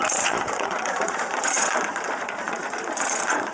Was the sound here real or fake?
fake